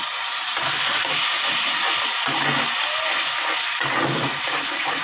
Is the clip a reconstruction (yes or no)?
no